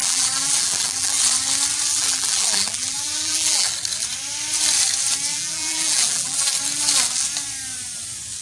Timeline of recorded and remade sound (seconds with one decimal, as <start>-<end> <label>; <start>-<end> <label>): 0.0-1.2 remade; 1.2-1.9 recorded; 1.9-3.7 remade; 3.7-5.3 recorded; 5.3-6.5 remade; 6.5-8.4 recorded